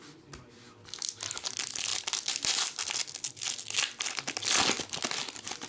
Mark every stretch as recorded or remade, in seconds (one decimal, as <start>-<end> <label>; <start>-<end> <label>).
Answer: 0.0-5.7 recorded